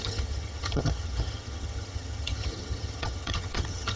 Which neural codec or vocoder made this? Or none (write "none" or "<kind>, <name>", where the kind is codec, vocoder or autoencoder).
vocoder, HiFi-GAN